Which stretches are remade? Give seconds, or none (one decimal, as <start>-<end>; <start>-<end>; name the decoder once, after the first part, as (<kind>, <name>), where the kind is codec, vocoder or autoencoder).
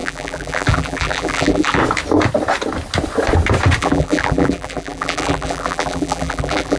0.0-1.8 (vocoder, BigVGAN v2); 3.8-6.8